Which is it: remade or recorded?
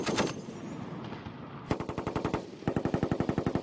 recorded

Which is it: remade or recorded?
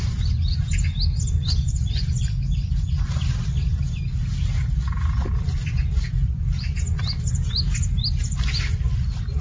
recorded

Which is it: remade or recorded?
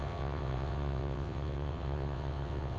remade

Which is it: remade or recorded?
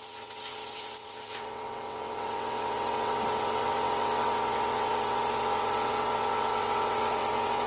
remade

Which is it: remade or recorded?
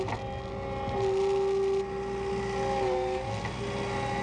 recorded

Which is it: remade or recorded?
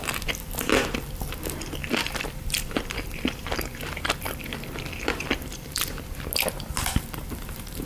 remade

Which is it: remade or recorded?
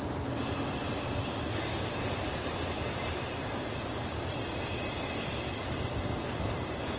recorded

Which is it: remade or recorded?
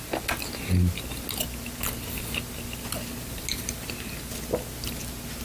recorded